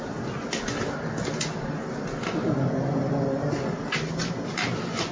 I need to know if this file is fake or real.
real